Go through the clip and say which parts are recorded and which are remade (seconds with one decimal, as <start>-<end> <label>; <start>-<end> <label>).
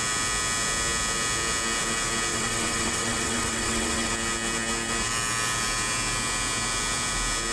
0.0-2.3 recorded; 2.3-4.1 remade; 4.1-7.5 recorded